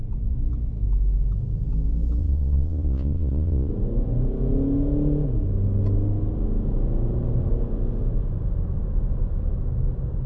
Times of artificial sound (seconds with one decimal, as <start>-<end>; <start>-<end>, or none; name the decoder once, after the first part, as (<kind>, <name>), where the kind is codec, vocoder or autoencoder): 2.2-3.7 (vocoder, Vocos)